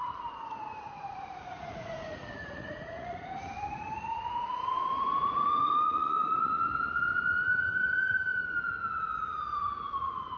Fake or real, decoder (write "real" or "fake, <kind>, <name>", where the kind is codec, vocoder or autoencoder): fake, vocoder, Vocos